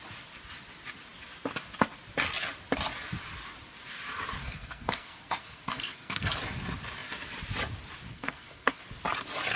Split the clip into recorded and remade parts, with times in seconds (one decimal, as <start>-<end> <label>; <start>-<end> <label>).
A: 0.0-4.4 recorded; 4.4-6.3 remade; 6.3-8.1 recorded; 8.1-8.8 remade; 8.8-9.6 recorded